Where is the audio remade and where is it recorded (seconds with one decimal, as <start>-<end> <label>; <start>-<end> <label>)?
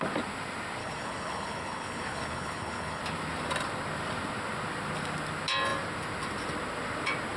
0.0-0.8 recorded; 0.8-3.0 remade; 3.0-7.4 recorded